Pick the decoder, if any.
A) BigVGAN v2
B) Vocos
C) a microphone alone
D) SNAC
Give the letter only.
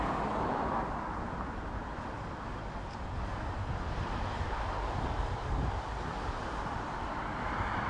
A